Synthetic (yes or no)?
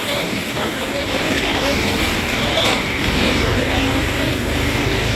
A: yes